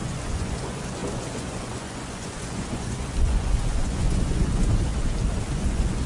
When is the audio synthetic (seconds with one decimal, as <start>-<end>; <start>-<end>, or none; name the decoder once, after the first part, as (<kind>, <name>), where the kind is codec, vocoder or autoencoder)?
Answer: 0.0-4.9 (vocoder, Vocos); 5.5-6.1